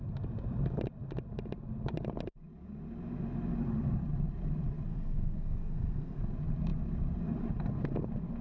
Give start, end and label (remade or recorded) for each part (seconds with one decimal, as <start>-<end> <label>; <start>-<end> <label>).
0.0-4.9 recorded; 4.9-6.2 remade; 6.2-8.4 recorded